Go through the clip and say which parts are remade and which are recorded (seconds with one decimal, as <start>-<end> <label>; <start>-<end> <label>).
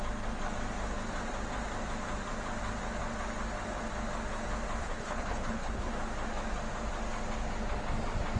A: 0.0-4.8 recorded; 4.8-5.9 remade; 5.9-8.4 recorded